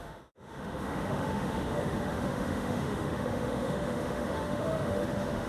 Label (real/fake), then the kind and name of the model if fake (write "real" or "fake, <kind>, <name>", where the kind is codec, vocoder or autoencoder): fake, autoencoder, DAC-VAE